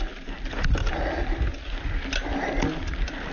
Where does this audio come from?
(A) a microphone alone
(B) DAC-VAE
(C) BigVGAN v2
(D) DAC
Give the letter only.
A